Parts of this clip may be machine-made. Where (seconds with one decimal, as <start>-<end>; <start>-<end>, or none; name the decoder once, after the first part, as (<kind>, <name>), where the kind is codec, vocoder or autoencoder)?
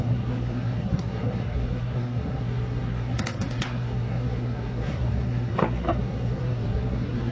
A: 0.0-7.3 (codec, SNAC)